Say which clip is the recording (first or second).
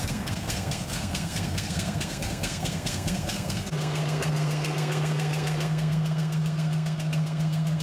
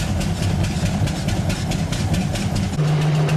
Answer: second